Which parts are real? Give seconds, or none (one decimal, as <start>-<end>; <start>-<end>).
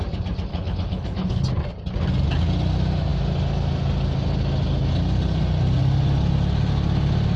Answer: 0.0-0.5; 1.4-7.4